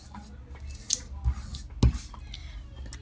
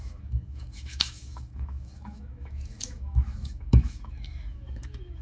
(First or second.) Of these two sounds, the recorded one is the first